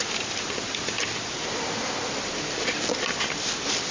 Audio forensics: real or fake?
real